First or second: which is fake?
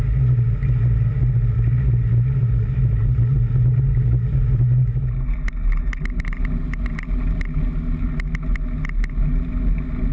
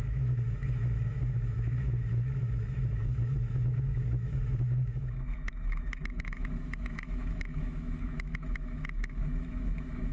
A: second